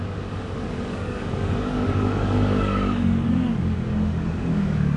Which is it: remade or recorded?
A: remade